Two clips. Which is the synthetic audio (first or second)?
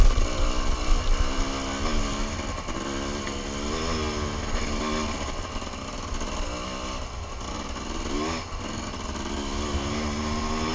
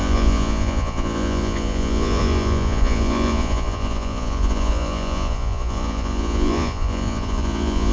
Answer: second